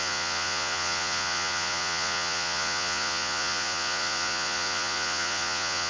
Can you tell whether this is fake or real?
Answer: fake